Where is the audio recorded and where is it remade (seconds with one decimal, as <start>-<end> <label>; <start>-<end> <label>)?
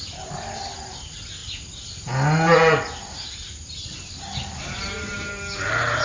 0.0-6.0 recorded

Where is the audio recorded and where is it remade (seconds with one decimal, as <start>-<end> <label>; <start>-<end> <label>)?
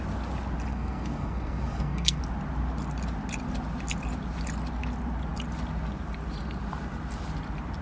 0.0-0.7 recorded; 0.7-2.2 remade; 2.2-7.8 recorded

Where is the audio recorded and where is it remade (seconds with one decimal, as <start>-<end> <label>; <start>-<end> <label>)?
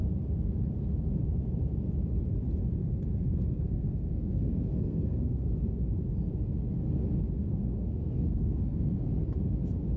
0.0-2.8 recorded; 2.8-5.8 remade; 5.8-7.4 recorded; 7.4-9.1 remade; 9.1-10.0 recorded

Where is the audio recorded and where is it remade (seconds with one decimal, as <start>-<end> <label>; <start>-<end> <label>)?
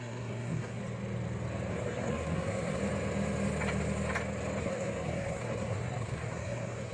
0.0-0.8 remade; 0.8-1.7 recorded; 1.7-2.8 remade; 2.8-4.6 recorded; 4.6-6.9 remade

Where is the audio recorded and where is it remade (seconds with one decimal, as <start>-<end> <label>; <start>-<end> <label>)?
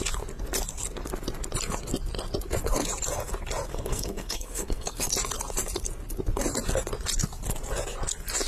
0.0-3.7 recorded; 3.7-5.1 remade; 5.1-8.5 recorded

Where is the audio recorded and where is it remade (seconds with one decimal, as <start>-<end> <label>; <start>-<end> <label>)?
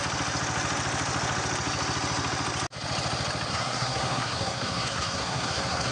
0.0-3.5 recorded; 3.5-5.9 remade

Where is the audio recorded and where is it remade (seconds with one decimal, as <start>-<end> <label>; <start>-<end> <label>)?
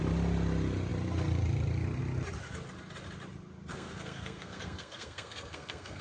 0.0-3.7 recorded; 3.7-6.0 remade